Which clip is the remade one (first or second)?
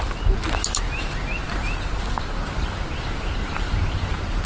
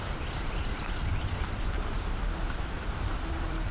second